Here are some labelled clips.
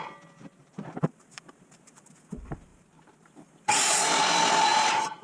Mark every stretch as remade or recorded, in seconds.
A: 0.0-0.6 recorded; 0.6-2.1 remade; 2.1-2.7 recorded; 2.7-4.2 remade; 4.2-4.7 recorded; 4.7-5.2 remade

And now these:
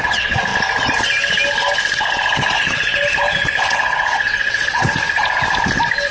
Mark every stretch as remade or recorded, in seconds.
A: 0.0-0.5 remade; 0.5-3.7 recorded; 3.7-4.8 remade; 4.8-6.1 recorded

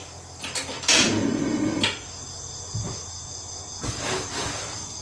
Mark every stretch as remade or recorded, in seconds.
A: 0.0-5.0 recorded

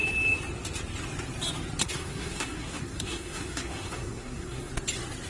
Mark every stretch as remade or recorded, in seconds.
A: 0.0-1.8 recorded; 1.8-4.7 remade; 4.7-5.3 recorded

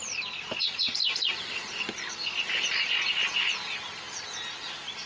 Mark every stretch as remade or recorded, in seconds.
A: 0.0-5.1 recorded

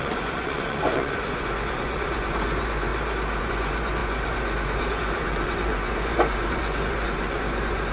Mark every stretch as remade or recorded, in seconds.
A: 0.0-2.9 remade; 2.9-3.4 recorded; 3.4-7.9 remade

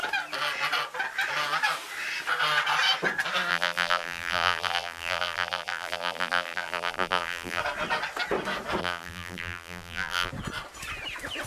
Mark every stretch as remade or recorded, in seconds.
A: 0.0-3.5 recorded; 3.5-7.6 remade; 7.6-8.8 recorded; 8.8-10.3 remade; 10.3-11.5 recorded